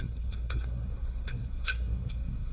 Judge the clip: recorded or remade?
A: remade